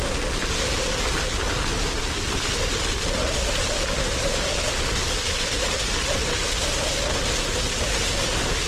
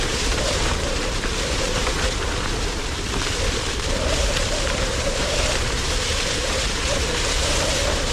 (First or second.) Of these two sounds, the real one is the first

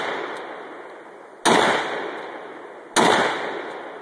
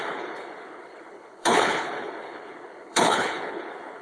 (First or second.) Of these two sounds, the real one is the first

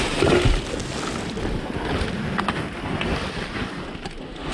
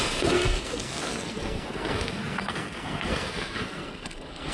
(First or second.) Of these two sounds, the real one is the first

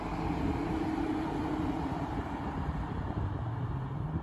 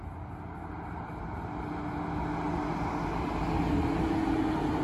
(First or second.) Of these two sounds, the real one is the second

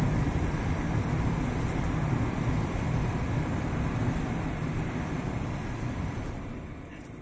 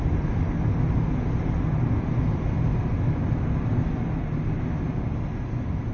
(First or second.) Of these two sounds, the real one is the second